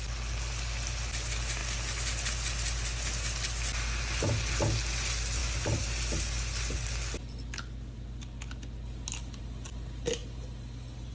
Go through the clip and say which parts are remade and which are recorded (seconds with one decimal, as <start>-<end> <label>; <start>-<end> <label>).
0.0-11.1 recorded